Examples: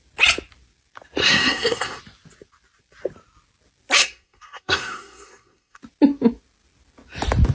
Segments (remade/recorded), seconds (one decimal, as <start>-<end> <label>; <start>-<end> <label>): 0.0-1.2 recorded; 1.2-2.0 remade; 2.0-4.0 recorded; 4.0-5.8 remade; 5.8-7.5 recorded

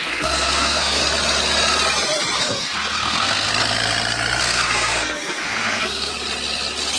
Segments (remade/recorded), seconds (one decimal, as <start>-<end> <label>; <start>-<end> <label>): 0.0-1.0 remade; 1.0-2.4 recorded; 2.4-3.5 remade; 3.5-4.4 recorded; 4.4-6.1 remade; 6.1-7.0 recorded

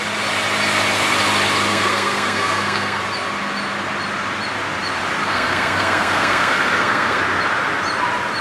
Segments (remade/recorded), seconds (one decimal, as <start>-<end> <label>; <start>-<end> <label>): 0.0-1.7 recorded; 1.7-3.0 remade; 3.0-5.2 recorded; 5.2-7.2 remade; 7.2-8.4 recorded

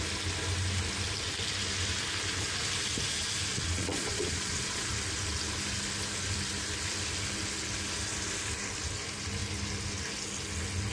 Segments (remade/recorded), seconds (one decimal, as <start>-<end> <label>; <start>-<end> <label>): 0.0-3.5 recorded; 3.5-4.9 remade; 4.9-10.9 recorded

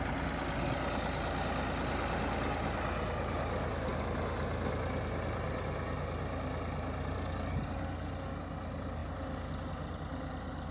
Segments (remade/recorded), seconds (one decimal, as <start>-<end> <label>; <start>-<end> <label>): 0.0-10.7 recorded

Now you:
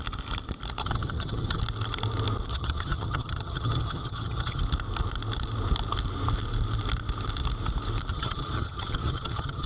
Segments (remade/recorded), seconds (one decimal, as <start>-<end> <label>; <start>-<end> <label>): 0.0-0.8 recorded; 0.8-1.6 remade; 1.6-2.5 recorded; 2.5-4.6 remade; 4.6-8.1 recorded; 8.1-9.7 remade

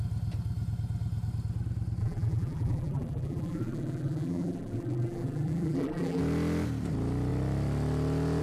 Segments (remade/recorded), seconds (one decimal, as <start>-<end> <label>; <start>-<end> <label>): 0.0-2.0 recorded; 2.0-6.2 remade; 6.2-8.4 recorded